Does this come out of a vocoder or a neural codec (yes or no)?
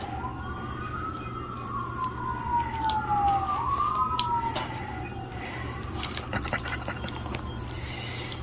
no